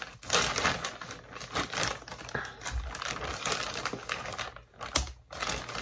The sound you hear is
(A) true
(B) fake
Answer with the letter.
A